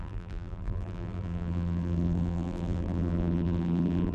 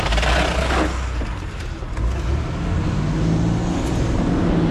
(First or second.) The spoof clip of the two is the first